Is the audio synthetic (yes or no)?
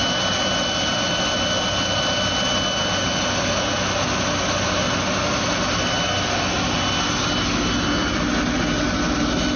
no